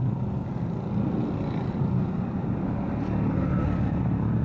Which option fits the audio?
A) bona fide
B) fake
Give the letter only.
A